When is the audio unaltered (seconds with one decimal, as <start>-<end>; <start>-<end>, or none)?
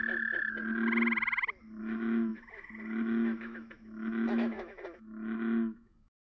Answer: 0.0-1.8